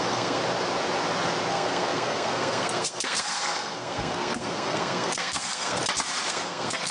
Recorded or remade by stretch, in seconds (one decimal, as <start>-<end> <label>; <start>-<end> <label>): 0.0-0.4 remade; 0.4-1.5 recorded; 1.5-5.8 remade; 5.8-6.3 recorded; 6.3-6.9 remade

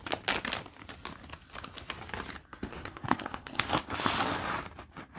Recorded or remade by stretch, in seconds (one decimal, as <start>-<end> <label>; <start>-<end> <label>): 0.0-2.7 recorded; 2.7-3.6 remade; 3.6-5.2 recorded

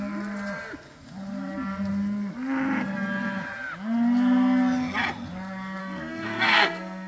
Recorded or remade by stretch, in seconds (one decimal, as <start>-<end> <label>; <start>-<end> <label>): 0.0-5.8 recorded; 5.8-7.1 remade

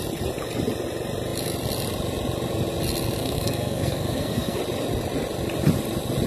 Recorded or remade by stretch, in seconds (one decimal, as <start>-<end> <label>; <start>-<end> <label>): 0.0-3.2 recorded; 3.2-4.6 remade; 4.6-6.3 recorded

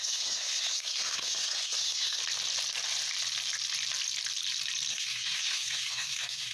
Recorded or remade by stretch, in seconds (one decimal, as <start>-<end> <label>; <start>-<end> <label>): 0.0-2.2 remade; 2.2-4.9 recorded; 4.9-6.5 remade